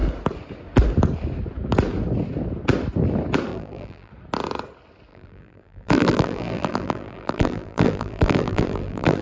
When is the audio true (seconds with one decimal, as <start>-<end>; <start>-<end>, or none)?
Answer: 0.0-3.5; 4.1-5.1